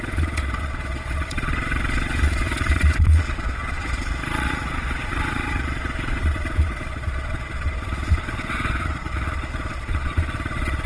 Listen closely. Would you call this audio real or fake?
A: fake